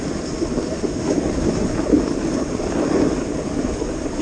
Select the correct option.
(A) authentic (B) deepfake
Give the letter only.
B